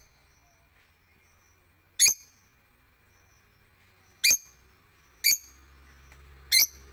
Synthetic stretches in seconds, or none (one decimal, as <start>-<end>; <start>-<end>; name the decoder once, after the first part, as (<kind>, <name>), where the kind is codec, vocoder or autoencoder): none